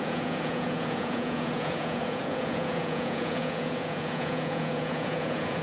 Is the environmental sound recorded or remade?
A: remade